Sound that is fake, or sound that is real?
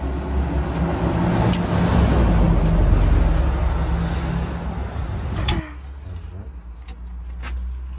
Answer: real